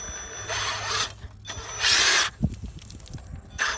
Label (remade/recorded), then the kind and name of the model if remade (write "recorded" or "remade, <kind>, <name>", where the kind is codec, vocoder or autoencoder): recorded